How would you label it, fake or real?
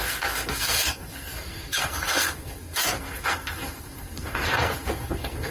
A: fake